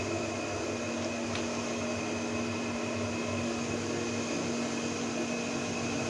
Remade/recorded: recorded